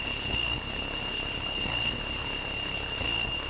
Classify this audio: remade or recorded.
remade